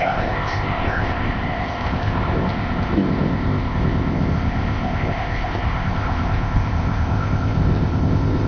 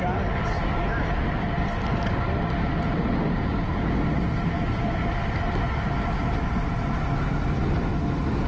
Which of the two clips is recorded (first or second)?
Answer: second